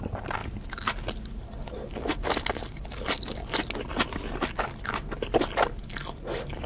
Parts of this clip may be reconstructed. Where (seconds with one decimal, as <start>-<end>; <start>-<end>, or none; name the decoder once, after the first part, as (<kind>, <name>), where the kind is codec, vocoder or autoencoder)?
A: none